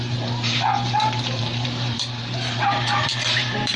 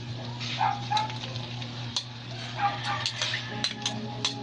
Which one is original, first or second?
second